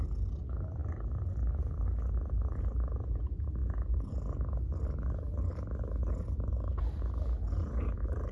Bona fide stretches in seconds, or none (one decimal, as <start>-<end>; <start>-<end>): 0.0-8.3